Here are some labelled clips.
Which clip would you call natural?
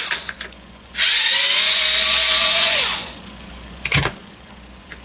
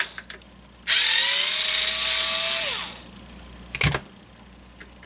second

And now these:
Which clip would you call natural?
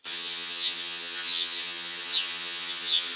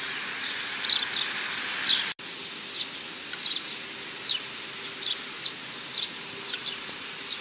second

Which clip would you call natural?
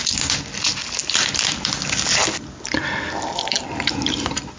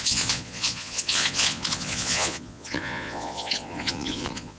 first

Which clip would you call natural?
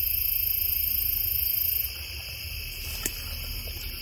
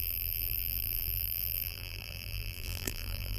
first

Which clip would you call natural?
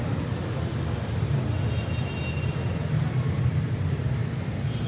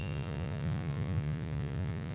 first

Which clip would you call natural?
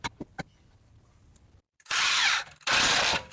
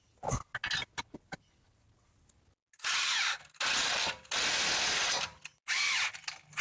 second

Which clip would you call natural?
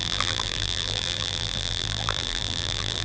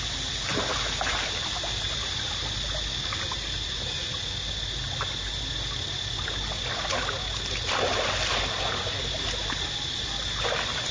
second